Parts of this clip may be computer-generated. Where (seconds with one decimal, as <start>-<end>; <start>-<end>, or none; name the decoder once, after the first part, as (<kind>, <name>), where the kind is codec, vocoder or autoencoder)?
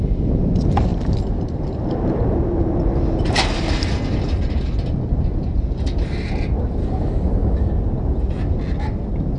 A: 6.8-7.7 (codec, DAC)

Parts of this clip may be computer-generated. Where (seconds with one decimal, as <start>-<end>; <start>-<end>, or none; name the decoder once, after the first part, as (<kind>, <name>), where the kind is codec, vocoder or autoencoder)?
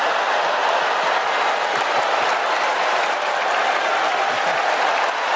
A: none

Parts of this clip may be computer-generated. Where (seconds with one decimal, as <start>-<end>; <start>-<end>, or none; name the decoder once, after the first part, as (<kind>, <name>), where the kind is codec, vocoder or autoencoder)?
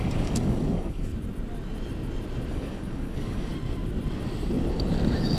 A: 0.0-1.1 (codec, DAC); 2.5-3.5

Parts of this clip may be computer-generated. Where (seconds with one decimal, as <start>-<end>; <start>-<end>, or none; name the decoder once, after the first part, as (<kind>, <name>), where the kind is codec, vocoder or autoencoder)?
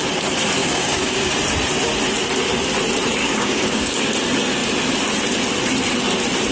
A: 0.6-1.3 (codec, DAC); 3.2-4.0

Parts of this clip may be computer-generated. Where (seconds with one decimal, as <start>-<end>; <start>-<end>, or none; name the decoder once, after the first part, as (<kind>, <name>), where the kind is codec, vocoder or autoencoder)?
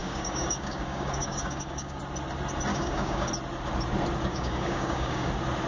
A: 0.0-2.0 (codec, DAC); 2.7-3.3; 4.3-5.3